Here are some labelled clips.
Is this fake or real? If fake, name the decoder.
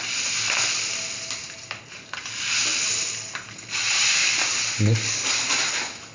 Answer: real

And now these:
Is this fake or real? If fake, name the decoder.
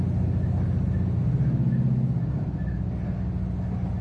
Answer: real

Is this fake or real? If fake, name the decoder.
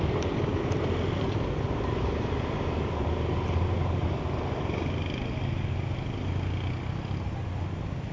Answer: real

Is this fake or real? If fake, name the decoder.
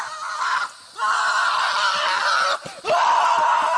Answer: real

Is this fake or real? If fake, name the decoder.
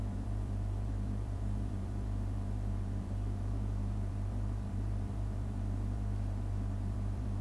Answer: fake, vocoder, BigVGAN v2